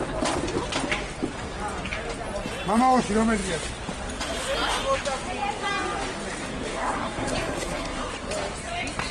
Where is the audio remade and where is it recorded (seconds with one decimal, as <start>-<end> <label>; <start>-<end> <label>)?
0.0-6.7 recorded; 6.7-8.1 remade; 8.1-9.1 recorded